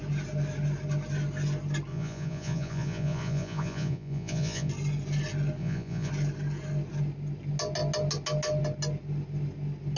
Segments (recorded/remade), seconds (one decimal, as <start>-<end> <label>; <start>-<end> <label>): 0.0-1.9 recorded; 1.9-4.7 remade; 4.7-5.6 recorded; 5.6-6.1 remade; 6.1-10.0 recorded